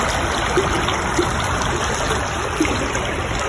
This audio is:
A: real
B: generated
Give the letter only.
A